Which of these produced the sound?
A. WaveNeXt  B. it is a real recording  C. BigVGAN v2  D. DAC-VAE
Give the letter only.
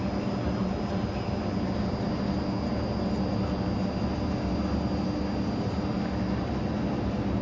B